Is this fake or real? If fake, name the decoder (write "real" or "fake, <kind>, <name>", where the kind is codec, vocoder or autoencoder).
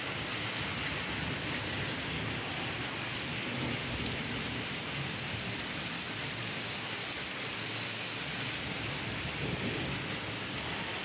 real